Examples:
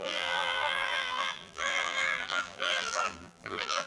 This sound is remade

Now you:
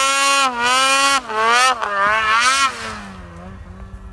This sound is recorded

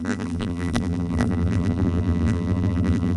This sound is remade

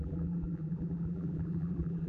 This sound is remade